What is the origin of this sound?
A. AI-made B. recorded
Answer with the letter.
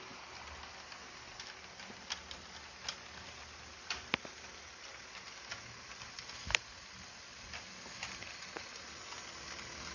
B